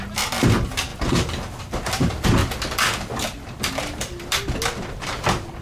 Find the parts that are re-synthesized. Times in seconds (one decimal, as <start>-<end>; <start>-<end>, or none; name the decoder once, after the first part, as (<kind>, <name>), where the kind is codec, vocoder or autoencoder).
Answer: 0.0-0.9 (vocoder, BigVGAN v2); 1.6-2.4; 4.9-5.6